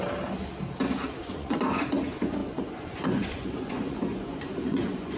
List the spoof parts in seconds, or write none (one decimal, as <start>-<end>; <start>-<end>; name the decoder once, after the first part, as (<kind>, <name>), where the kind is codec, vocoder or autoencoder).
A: 1.2-5.2 (vocoder, Vocos)